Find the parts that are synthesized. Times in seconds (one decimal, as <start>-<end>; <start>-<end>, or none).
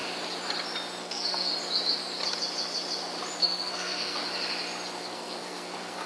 1.0-1.5; 3.4-4.2; 5.0-6.1